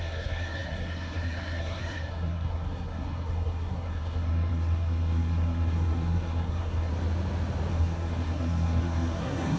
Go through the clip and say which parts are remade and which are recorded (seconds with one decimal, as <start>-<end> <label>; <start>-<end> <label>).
0.0-6.9 remade; 6.9-7.7 recorded; 7.7-9.6 remade